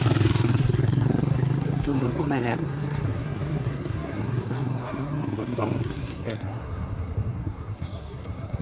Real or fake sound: fake